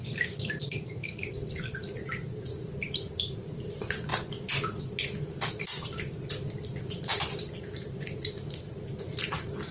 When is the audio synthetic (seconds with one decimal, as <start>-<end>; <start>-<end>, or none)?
0.0-4.1; 4.8-9.7